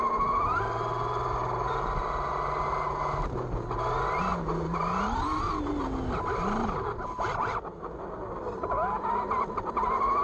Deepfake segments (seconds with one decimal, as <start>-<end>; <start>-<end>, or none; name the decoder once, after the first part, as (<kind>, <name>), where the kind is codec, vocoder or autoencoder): none